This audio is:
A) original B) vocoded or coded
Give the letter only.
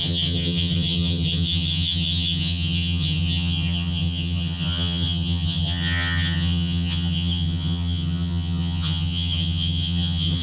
B